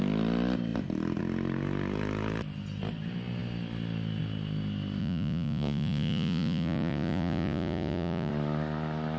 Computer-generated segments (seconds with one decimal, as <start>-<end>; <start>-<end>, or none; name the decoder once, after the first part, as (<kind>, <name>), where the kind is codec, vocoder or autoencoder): 5.0-8.3 (vocoder, Vocos)